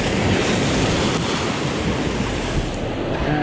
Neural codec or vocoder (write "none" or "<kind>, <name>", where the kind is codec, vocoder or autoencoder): none